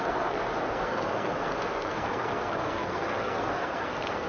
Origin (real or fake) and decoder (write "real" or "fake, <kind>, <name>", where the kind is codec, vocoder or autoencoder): fake, codec, SNAC